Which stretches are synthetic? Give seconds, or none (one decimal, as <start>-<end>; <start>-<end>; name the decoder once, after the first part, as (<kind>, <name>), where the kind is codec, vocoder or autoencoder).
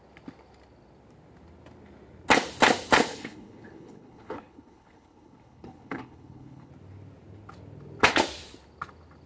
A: 3.1-6.7 (codec, HILCodec)